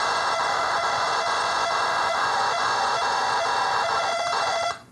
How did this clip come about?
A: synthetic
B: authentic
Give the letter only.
A